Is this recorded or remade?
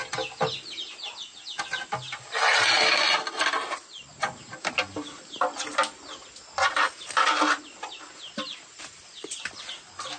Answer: recorded